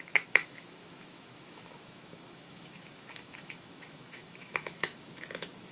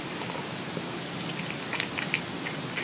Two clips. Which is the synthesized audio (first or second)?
first